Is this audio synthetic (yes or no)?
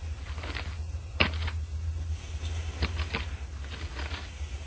no